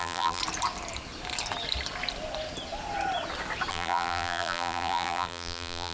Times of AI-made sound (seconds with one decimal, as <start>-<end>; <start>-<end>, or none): 0.0-0.4; 3.7-5.9